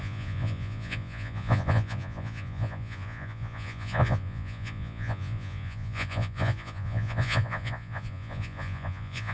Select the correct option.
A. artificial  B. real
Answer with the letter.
A